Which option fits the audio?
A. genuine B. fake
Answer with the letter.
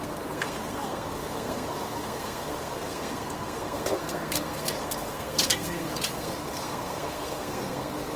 B